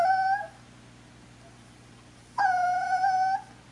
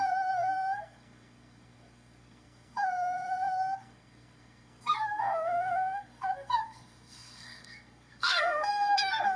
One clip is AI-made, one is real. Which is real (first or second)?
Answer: first